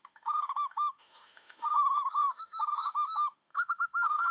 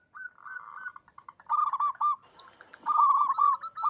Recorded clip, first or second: second